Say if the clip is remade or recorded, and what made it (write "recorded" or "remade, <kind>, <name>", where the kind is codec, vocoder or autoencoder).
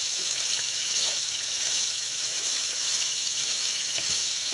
remade, autoencoder, DAC-VAE